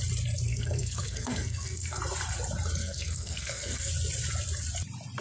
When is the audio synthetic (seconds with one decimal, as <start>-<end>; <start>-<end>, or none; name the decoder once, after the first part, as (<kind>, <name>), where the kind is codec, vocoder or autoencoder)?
0.5-2.0 (codec, SNAC); 2.8-3.9